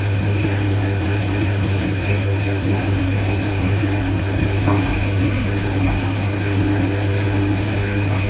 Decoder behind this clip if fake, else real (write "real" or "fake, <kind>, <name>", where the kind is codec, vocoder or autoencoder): fake, codec, SNAC